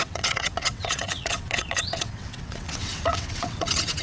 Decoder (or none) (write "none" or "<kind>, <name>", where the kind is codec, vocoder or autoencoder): vocoder, WaveNeXt